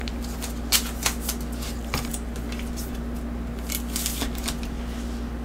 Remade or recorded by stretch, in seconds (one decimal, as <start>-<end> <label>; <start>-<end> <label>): 0.0-5.4 recorded